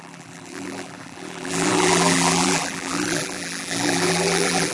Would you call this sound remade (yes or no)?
yes